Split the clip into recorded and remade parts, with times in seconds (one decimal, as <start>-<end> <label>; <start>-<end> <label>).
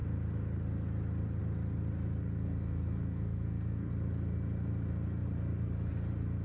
0.0-2.2 recorded; 2.2-3.9 remade; 3.9-6.4 recorded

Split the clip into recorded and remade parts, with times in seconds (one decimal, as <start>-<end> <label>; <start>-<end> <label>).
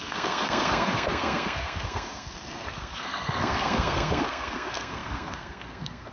0.0-6.1 remade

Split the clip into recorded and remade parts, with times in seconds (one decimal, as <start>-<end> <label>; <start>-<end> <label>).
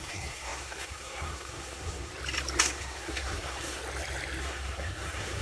0.0-2.1 remade; 2.1-2.6 recorded; 2.6-3.8 remade; 3.8-4.4 recorded; 4.4-5.4 remade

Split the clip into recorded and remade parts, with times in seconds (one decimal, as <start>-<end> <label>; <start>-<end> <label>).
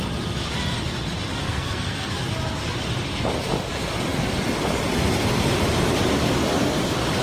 0.0-1.4 recorded; 1.4-2.1 remade; 2.1-7.2 recorded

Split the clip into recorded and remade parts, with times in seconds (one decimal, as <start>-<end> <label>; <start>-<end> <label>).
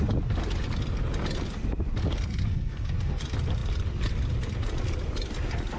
0.0-2.3 recorded; 2.3-3.2 remade; 3.2-5.8 recorded